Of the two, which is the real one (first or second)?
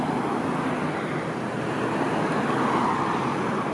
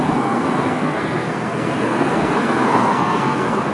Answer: first